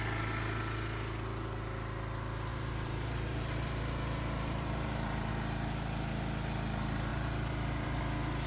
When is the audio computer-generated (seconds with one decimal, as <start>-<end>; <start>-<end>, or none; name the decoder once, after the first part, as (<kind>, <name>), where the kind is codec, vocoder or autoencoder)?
2.5-5.3 (vocoder, BigVGAN v2); 7.1-8.0